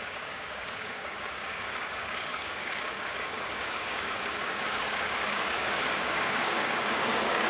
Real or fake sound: fake